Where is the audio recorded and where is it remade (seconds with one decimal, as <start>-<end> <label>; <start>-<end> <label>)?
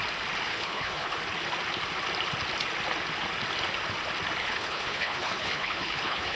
0.0-0.5 recorded; 0.5-1.2 remade; 1.2-4.4 recorded; 4.4-6.4 remade